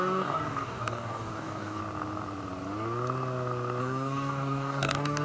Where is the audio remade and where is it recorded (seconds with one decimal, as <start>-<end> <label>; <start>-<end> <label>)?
0.0-1.8 remade; 1.8-3.8 recorded; 3.8-5.2 remade